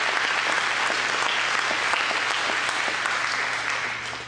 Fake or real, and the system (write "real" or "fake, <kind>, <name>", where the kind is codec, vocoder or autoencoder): real